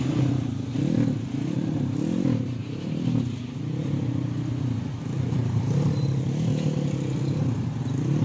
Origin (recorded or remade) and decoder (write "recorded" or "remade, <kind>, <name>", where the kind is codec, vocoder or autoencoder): remade, vocoder, BigVGAN v2